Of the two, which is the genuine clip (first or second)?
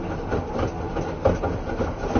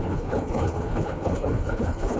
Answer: first